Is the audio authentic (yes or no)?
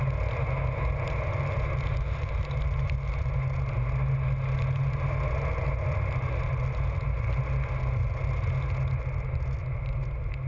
yes